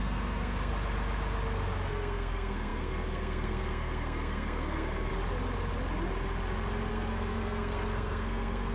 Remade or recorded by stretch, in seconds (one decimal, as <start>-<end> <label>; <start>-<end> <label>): 0.0-0.7 remade; 0.7-1.9 recorded; 1.9-5.1 remade; 5.1-6.9 recorded; 6.9-8.7 remade